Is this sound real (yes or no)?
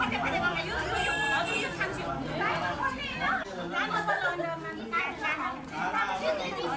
yes